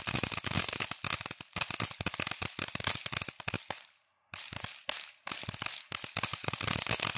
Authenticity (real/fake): real